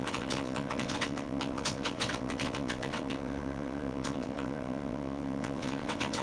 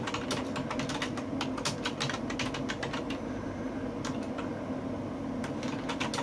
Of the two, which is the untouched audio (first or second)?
second